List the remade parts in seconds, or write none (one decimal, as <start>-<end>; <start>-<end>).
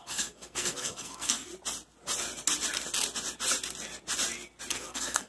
0.0-1.5; 4.7-5.3